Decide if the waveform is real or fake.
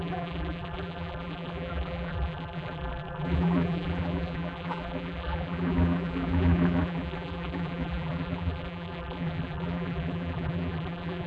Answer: fake